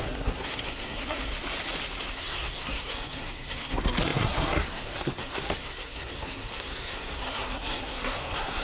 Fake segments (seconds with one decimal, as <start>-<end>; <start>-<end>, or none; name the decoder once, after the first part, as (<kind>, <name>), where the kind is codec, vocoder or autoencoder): 0.0-1.3 (codec, SNAC); 2.1-8.6